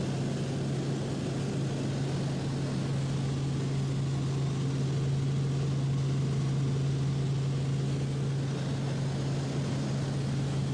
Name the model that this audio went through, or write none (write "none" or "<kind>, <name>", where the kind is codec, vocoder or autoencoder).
none